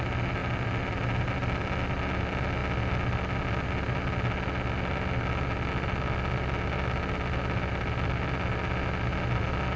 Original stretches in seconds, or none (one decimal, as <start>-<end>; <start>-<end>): 0.0-9.8